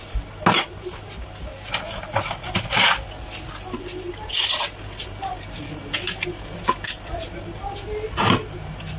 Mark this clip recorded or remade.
recorded